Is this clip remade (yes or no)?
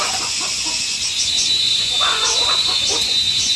yes